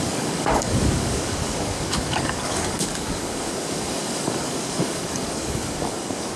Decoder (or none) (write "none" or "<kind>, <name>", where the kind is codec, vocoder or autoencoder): codec, DAC